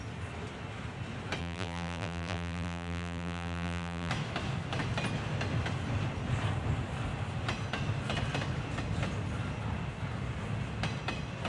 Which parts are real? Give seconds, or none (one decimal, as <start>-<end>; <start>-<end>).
0.0-1.4; 4.1-11.5